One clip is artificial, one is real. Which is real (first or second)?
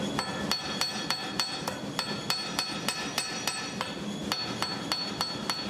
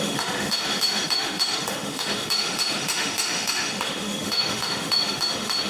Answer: first